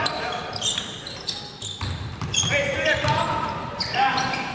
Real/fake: fake